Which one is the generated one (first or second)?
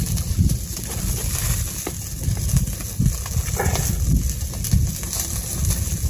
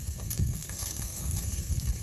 second